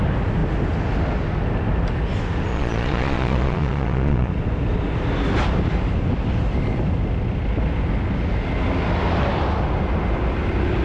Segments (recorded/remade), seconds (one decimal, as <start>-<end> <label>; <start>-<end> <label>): 0.0-2.5 recorded; 2.5-4.3 remade; 4.3-10.8 recorded